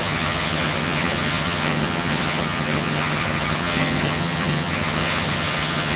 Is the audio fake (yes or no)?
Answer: yes